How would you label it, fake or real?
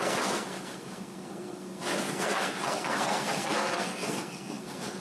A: fake